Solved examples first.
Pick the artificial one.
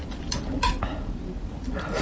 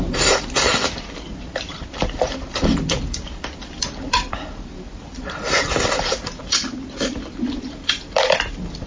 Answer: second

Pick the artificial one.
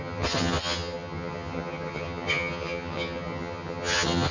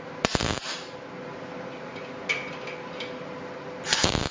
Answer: first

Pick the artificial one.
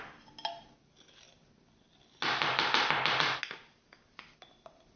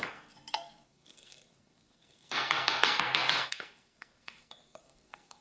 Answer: second